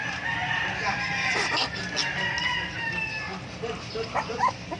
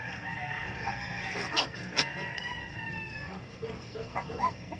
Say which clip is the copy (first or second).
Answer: second